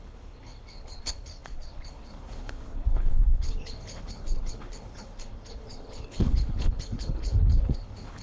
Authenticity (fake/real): fake